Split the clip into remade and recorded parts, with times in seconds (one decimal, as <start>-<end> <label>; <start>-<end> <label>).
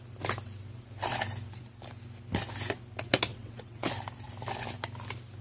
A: 0.0-3.3 recorded; 3.3-3.9 remade; 3.9-5.4 recorded